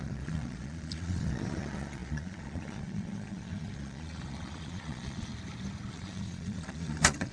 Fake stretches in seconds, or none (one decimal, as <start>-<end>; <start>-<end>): 0.0-5.3; 5.9-7.3